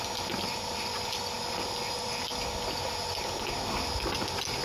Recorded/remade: recorded